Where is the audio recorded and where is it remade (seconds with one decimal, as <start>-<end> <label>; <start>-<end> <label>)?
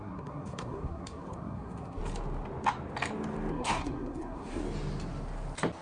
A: 0.0-2.0 remade; 2.0-3.5 recorded; 3.5-4.6 remade; 4.6-5.8 recorded